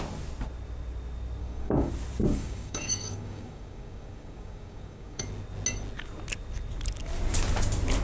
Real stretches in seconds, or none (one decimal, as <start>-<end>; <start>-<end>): 0.0-1.4; 1.9-2.3; 5.2-8.0